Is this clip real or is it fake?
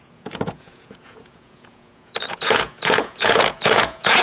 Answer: fake